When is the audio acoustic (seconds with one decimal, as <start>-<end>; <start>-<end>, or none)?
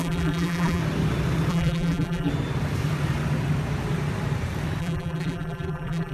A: 0.8-1.5; 2.3-4.8